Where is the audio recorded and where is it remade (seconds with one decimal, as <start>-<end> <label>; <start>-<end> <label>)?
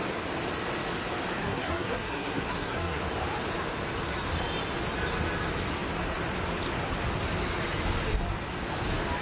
0.0-1.4 recorded; 1.4-3.0 remade; 3.0-9.2 recorded